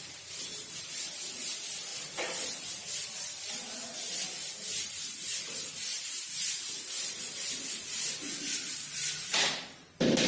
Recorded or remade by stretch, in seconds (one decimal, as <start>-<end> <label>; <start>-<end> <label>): 0.0-10.3 recorded